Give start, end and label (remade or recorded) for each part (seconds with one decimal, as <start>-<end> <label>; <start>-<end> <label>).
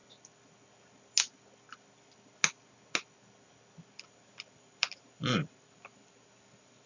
0.0-4.1 recorded; 4.1-6.9 remade